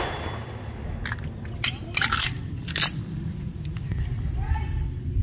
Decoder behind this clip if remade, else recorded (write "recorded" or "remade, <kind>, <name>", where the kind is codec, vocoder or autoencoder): recorded